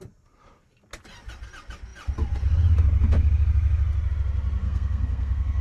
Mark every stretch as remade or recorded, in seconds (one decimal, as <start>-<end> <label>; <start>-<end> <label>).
0.0-4.6 recorded; 4.6-5.6 remade